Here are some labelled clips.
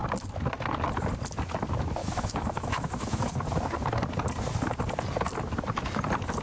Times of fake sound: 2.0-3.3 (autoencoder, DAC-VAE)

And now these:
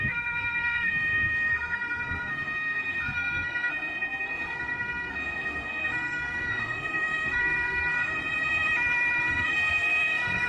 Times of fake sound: 0.0-8.1 (codec, SNAC); 9.2-10.5

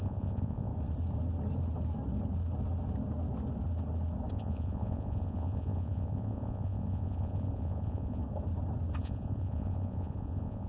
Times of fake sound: 0.0-0.7 (vocoder, Vocos); 4.3-8.2; 9.0-10.7

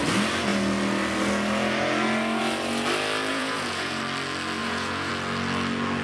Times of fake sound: 3.3-4.0 (vocoder, Vocos); 4.6-5.1

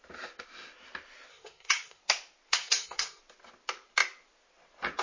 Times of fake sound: 1.3-2.0 (codec, SNAC); 2.5-3.2